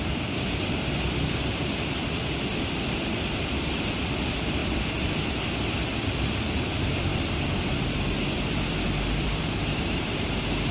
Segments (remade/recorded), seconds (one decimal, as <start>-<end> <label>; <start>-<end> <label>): 0.0-1.5 remade; 1.5-2.9 recorded; 2.9-7.1 remade; 7.1-9.2 recorded; 9.2-10.7 remade

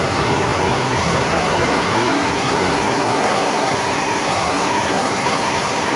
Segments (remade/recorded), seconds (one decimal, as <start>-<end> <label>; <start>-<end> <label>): 0.0-6.0 remade

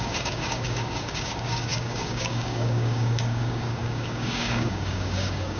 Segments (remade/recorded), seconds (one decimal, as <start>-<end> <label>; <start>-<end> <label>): 0.0-5.6 remade

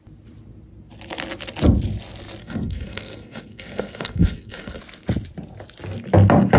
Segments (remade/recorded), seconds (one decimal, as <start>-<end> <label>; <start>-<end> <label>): 0.0-2.4 recorded; 2.4-4.8 remade; 4.8-6.6 recorded